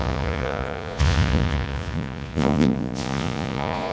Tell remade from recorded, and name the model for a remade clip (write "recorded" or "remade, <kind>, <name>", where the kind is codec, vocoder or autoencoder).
remade, vocoder, Vocos